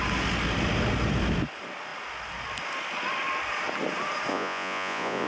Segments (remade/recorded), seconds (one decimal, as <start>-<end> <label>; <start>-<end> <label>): 0.0-4.3 recorded; 4.3-5.3 remade